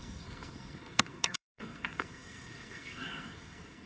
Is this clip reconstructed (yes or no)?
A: yes